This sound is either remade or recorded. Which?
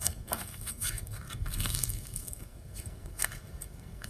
remade